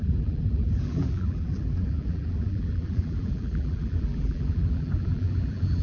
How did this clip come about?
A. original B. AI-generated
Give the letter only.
B